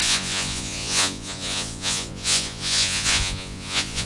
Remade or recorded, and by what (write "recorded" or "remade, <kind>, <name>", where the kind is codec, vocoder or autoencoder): remade, vocoder, Vocos